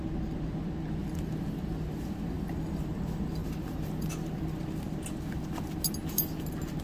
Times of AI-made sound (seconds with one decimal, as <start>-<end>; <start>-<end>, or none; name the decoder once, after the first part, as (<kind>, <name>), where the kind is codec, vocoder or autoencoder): 1.0-3.0 (vocoder, BigVGAN v2); 3.4-4.1

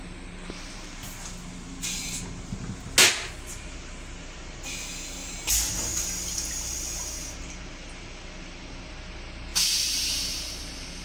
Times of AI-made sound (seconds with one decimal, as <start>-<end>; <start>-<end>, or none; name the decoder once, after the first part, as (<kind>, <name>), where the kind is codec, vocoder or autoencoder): 9.5-10.4 (vocoder, BigVGAN v2)

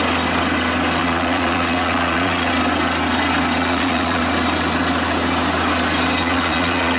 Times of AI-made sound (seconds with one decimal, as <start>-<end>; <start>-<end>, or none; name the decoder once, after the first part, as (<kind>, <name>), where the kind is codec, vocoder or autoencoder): 1.0-2.5 (vocoder, Vocos); 3.6-4.2; 6.2-7.0

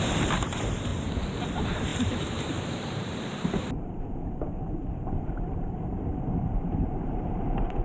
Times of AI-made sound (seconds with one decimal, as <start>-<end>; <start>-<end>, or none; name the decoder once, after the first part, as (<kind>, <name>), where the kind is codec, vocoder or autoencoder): 0.0-0.9 (vocoder, BigVGAN v2); 1.5-7.8

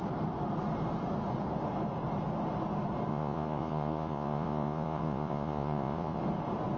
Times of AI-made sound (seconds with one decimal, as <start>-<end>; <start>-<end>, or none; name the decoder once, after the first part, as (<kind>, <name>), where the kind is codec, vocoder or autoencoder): 3.1-6.2 (vocoder, Vocos)